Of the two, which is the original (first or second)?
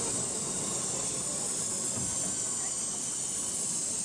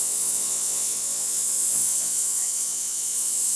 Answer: first